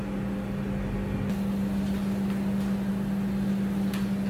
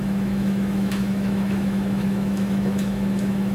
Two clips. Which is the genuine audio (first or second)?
first